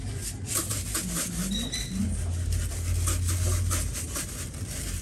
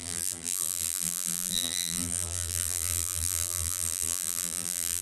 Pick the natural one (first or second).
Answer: first